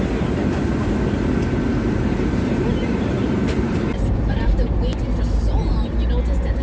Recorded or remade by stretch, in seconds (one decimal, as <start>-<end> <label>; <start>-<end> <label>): 0.0-1.7 recorded; 1.7-5.7 remade; 5.7-6.6 recorded